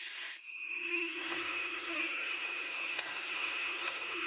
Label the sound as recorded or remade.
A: remade